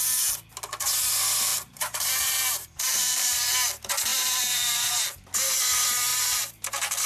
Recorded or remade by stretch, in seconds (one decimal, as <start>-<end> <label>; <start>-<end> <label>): 0.0-1.5 recorded; 1.5-3.5 remade; 3.5-4.1 recorded; 4.1-4.9 remade; 4.9-6.1 recorded; 6.1-7.1 remade